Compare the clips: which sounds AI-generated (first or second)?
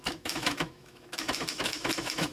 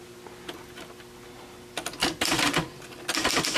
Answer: first